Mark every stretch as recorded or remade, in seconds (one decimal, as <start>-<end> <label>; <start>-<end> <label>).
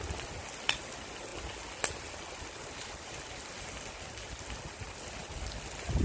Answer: 0.0-6.0 recorded